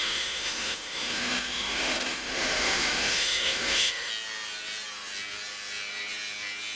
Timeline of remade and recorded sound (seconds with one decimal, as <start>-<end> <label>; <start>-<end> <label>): 0.0-4.1 remade; 4.1-6.8 recorded

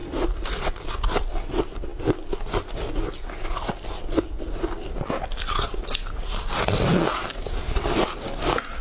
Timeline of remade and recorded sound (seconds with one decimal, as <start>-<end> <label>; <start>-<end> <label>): 0.0-8.8 recorded